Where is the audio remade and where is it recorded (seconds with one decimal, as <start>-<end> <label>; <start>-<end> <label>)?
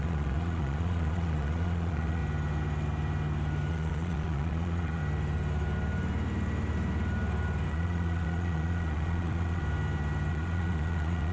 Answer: 0.0-2.2 remade; 2.2-3.7 recorded; 3.7-5.0 remade; 5.0-7.7 recorded; 7.7-9.6 remade; 9.6-10.3 recorded; 10.3-11.3 remade